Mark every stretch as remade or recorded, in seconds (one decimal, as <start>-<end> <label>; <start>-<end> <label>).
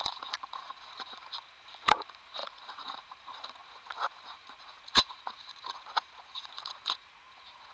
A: 0.0-7.7 remade